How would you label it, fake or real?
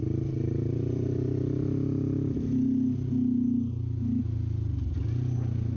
real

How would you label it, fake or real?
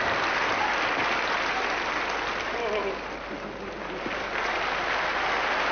real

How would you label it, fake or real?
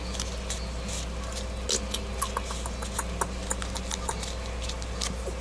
real